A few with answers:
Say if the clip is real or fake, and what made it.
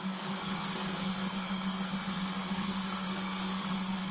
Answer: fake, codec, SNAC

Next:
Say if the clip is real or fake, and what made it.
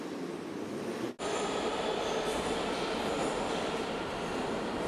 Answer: real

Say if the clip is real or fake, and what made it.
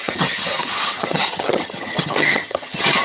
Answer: fake, vocoder, HiFi-GAN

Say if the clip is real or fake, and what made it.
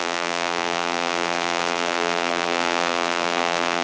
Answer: fake, vocoder, BigVGAN v2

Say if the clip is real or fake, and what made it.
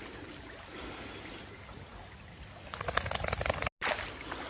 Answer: real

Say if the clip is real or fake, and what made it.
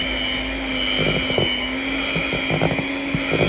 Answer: real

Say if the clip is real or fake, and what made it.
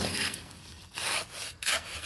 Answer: fake, codec, SNAC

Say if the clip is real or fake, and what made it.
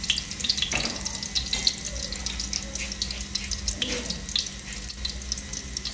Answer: real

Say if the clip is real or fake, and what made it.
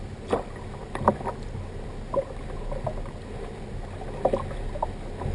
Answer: real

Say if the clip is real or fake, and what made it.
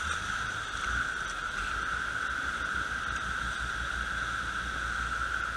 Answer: real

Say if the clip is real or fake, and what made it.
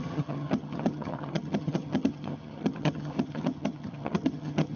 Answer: fake, vocoder, HiFi-GAN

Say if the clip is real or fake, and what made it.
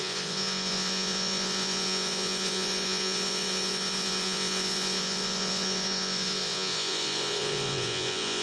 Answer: fake, vocoder, Vocos